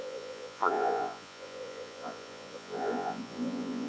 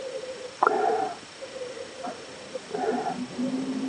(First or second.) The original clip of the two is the second